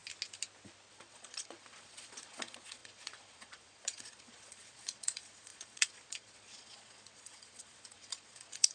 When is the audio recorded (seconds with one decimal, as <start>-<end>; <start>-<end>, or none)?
0.0-0.9